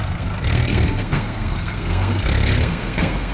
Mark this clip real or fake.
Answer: fake